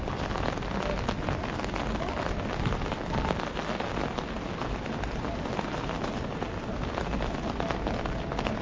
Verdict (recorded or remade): recorded